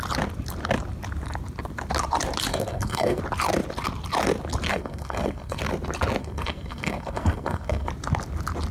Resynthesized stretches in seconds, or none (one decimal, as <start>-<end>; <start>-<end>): 2.5-3.2; 4.7-5.6; 6.2-7.9